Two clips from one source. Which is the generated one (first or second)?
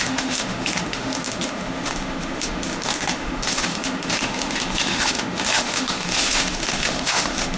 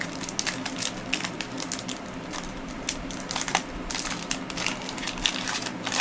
first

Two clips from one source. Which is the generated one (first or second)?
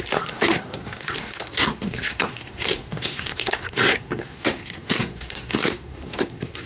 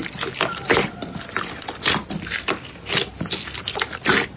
first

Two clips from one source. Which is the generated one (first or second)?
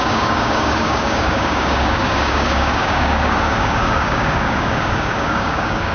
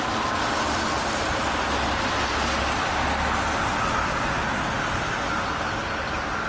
first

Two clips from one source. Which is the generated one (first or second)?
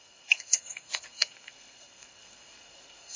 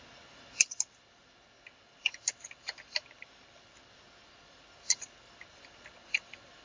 first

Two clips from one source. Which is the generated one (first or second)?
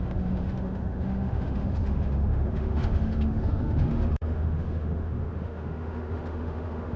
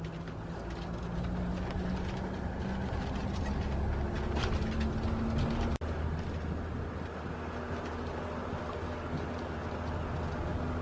first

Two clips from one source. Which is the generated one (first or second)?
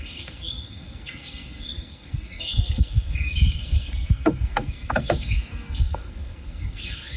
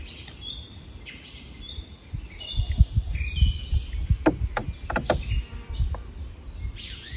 first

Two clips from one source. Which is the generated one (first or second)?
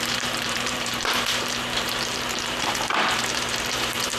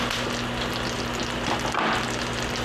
first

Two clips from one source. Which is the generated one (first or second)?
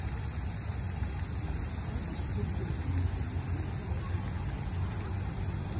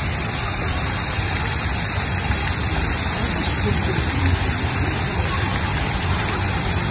second